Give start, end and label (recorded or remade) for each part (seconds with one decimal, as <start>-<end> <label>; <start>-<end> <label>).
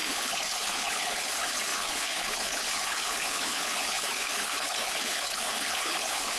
0.0-6.4 remade